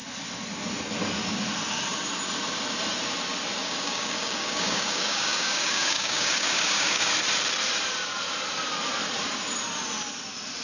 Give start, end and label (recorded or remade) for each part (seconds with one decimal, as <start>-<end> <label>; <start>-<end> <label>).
0.0-3.6 recorded; 3.6-7.1 remade; 7.1-10.6 recorded